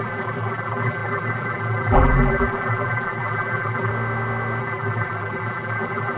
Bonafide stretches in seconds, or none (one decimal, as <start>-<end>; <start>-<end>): 3.9-4.6